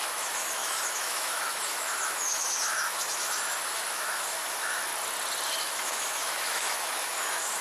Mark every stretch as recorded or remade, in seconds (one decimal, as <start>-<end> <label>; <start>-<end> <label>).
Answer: 0.0-4.9 remade; 4.9-5.6 recorded; 5.6-7.6 remade